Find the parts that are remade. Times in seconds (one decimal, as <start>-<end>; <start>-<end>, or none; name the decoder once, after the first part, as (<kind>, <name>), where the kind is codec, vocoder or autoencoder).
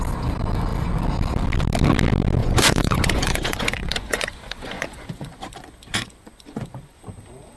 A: 2.4-7.0 (vocoder, Vocos)